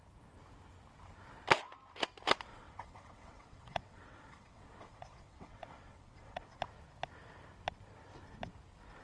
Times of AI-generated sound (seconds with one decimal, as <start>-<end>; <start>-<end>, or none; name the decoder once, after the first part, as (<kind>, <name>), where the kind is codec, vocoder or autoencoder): 2.5-6.6 (vocoder, WaveNeXt)